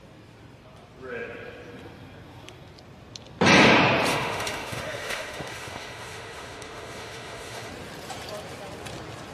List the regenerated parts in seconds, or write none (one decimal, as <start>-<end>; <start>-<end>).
4.1-7.7